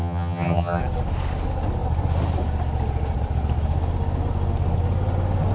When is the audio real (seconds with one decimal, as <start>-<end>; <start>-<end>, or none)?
0.8-5.5